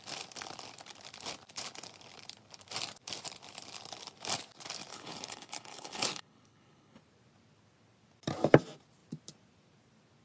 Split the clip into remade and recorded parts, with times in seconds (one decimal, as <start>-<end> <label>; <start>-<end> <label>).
0.0-4.9 recorded; 4.9-7.0 remade; 7.0-10.2 recorded